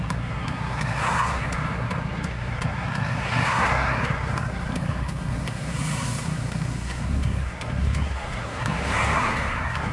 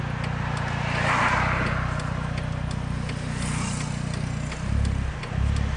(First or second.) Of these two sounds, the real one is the second